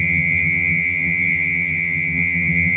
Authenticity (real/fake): fake